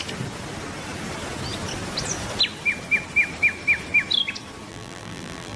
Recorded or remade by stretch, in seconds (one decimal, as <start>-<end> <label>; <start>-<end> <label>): 0.0-4.7 recorded; 4.7-5.6 remade